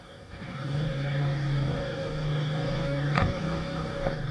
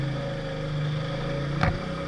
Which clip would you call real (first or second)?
second